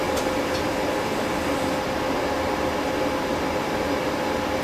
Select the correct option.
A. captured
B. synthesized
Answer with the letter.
A